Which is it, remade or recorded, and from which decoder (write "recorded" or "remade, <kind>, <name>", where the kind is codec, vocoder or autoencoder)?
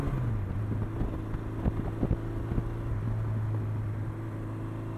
recorded